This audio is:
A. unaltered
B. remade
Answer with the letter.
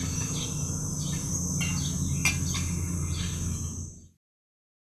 A